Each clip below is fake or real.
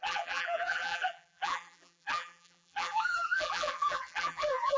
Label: fake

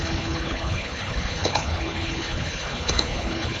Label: fake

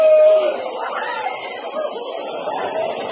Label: real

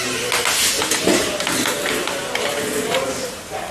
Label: real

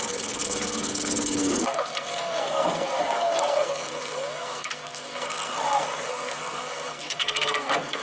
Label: fake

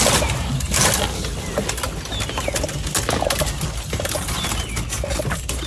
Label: real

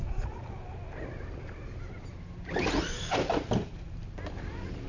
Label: real